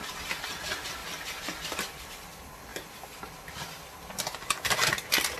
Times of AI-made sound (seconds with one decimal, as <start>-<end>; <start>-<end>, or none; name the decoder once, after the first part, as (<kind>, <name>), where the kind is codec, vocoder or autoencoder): 1.0-2.1 (vocoder, BigVGAN v2); 2.7-3.2